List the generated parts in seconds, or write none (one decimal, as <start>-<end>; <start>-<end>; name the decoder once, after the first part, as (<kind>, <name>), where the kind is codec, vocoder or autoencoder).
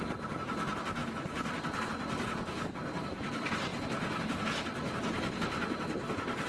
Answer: 1.0-1.8 (vocoder, BigVGAN v2); 3.7-4.4